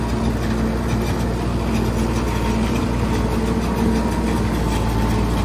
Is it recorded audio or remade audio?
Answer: recorded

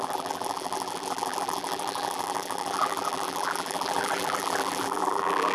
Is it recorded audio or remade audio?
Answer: remade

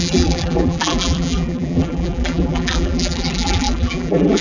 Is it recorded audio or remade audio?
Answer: remade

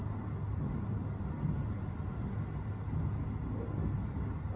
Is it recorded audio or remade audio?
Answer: recorded